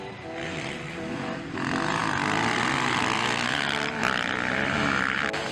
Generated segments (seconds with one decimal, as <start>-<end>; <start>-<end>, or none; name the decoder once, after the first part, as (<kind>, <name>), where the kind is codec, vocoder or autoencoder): 4.0-4.8 (vocoder, BigVGAN v2)